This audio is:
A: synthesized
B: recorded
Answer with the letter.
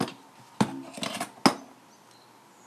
B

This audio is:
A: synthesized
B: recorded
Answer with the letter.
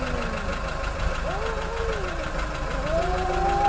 B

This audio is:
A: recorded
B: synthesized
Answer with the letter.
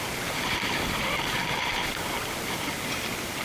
B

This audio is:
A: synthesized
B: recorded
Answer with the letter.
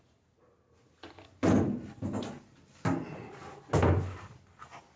B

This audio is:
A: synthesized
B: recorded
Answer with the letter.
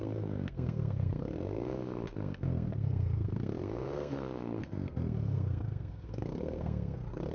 A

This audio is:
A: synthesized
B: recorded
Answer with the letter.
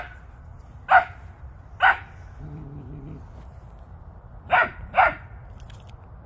B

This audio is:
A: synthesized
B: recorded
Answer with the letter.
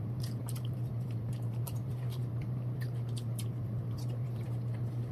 A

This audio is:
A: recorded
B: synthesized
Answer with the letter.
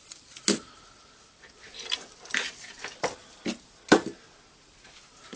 A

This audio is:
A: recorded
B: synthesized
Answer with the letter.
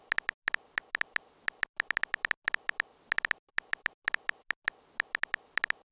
A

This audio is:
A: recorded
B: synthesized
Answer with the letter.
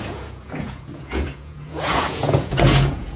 B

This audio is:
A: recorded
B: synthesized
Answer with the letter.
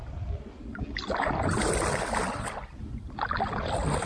A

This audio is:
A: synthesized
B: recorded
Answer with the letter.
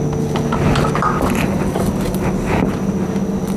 B